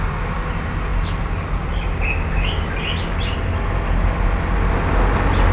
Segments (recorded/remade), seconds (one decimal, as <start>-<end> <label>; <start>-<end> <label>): 0.0-5.5 recorded